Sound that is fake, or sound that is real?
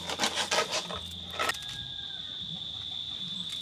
real